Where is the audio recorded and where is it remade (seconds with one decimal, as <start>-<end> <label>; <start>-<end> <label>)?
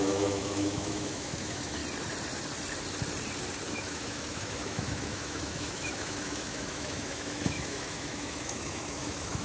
0.0-1.8 remade; 1.8-3.7 recorded; 3.7-9.4 remade